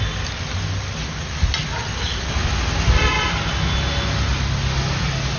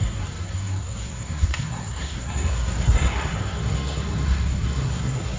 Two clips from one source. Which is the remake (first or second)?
second